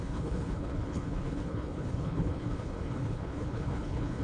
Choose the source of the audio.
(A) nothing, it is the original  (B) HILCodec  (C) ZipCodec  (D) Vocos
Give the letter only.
B